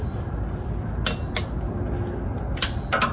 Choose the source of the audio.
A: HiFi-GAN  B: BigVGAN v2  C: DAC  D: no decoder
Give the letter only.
D